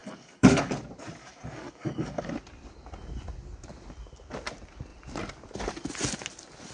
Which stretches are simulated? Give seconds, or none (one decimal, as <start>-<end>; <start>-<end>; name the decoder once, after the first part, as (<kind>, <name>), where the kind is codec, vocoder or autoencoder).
0.0-0.7 (codec, DAC); 1.2-2.3